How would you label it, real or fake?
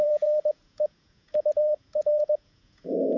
fake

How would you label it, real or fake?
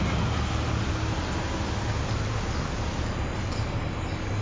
real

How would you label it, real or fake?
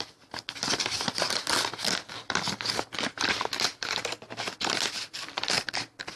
fake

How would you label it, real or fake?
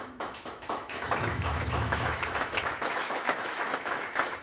fake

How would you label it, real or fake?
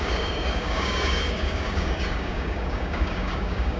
fake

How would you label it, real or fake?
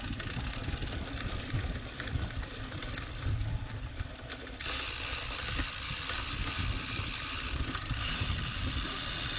fake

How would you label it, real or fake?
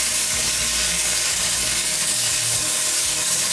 fake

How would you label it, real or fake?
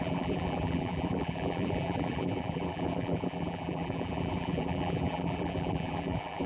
fake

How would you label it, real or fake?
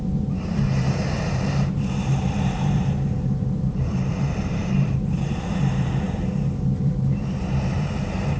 fake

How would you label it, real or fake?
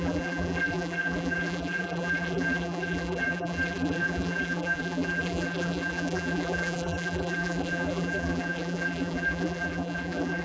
fake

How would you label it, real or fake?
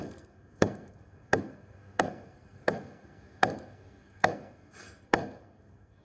fake